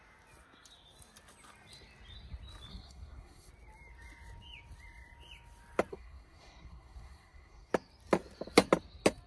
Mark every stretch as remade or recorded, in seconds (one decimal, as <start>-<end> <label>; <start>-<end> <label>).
0.0-2.7 recorded; 2.7-3.5 remade; 3.5-5.9 recorded; 5.9-7.7 remade; 7.7-9.3 recorded